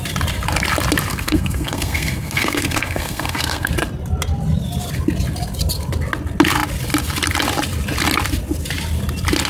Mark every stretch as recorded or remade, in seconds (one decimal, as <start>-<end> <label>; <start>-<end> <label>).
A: 0.0-1.1 recorded; 1.1-3.7 remade; 3.7-9.5 recorded